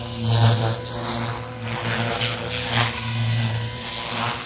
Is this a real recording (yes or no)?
yes